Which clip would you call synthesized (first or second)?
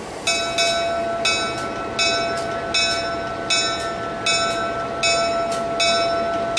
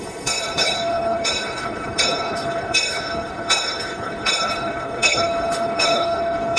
second